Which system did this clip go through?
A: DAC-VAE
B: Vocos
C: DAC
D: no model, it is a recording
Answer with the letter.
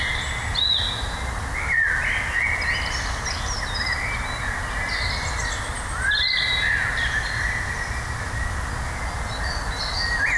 D